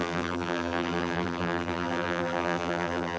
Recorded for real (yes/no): no